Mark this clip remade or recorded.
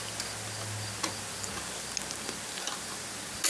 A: recorded